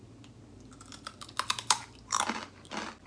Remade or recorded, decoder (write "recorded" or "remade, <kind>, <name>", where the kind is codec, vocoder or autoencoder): recorded